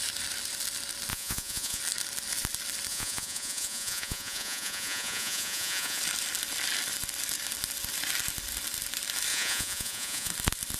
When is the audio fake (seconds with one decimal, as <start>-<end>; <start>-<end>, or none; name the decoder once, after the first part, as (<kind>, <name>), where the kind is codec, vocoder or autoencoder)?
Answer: 1.1-1.8 (vocoder, Vocos); 2.9-6.0; 9.3-10.3